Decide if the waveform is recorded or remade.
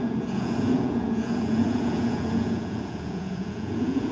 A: remade